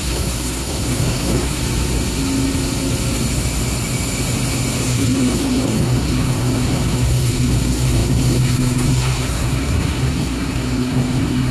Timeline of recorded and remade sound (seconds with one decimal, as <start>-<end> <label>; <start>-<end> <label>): 0.0-1.6 remade; 1.6-4.8 recorded; 4.8-11.5 remade